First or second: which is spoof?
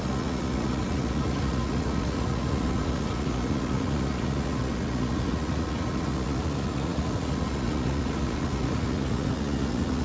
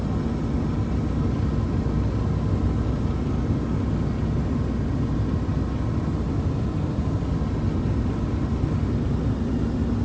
first